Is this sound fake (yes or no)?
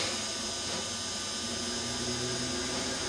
no